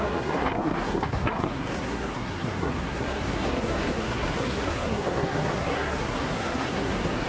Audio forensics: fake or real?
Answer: fake